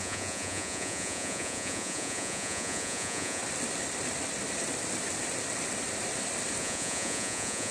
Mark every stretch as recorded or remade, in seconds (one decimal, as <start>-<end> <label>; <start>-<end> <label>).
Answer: 0.0-3.4 remade; 3.4-6.6 recorded; 6.6-7.7 remade